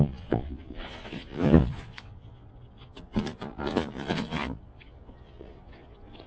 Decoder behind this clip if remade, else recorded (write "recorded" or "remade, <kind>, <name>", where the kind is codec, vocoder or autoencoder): remade, vocoder, Vocos